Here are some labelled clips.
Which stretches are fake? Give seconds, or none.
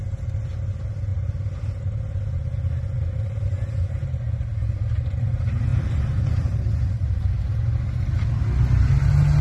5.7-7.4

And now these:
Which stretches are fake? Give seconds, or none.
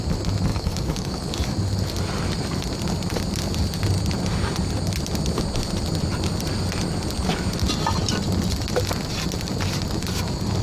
0.5-1.2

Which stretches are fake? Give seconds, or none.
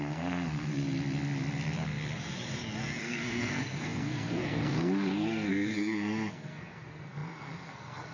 0.0-0.7; 3.0-8.1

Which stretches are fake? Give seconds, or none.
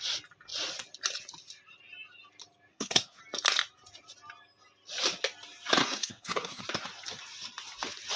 2.7-3.2; 5.8-6.6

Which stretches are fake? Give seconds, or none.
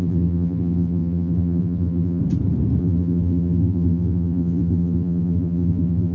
0.0-2.2; 2.8-6.1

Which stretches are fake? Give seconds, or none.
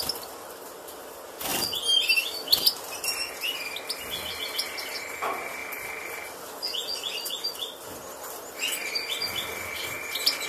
none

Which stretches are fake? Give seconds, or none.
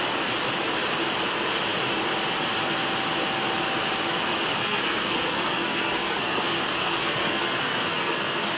4.6-8.6